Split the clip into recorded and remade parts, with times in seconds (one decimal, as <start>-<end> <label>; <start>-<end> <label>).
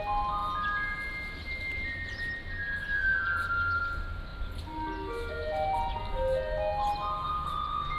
0.0-1.7 recorded; 1.7-2.5 remade; 2.5-3.1 recorded; 3.1-3.8 remade; 3.8-8.0 recorded